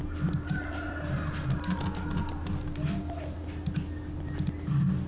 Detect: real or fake real